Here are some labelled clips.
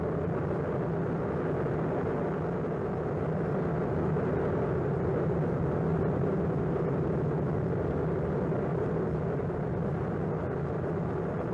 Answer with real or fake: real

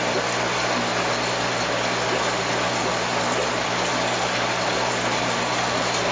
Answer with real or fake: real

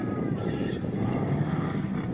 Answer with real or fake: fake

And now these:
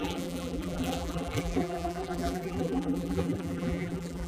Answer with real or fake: fake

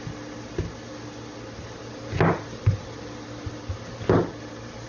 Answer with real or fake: real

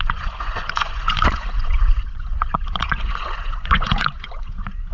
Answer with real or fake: fake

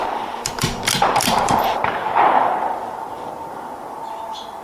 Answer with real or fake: fake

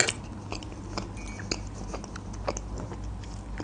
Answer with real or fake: real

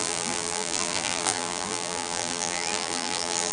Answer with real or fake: fake